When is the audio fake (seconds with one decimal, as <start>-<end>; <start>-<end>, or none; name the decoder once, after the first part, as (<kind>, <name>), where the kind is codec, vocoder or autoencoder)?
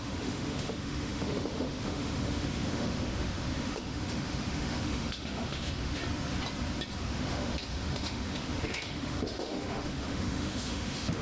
0.0-6.0 (autoencoder, DAC-VAE); 7.0-11.2